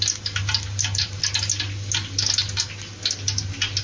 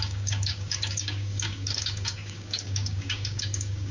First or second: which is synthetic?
second